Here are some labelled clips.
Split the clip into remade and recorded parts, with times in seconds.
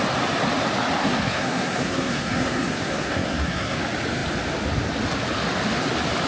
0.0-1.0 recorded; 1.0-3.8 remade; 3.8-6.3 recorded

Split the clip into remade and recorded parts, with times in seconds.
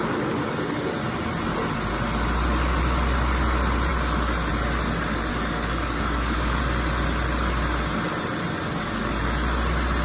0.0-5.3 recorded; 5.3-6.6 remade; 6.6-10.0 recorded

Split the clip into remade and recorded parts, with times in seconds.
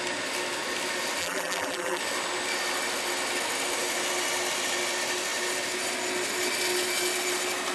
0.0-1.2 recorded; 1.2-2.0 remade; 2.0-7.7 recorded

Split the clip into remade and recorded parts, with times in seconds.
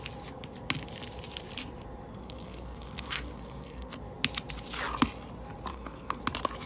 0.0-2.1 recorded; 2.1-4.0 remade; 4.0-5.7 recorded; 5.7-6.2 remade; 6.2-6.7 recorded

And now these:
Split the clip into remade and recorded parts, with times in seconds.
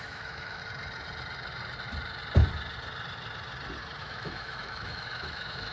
0.0-0.6 remade; 0.6-4.0 recorded; 4.0-5.7 remade